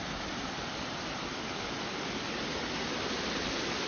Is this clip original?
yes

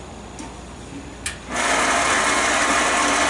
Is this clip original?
yes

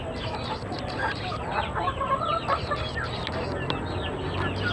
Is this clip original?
yes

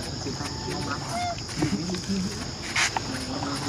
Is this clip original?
yes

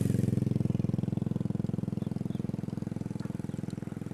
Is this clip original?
yes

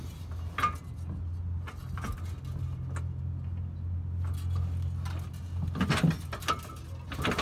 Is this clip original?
yes